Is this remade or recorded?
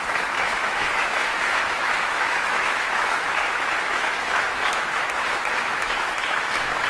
remade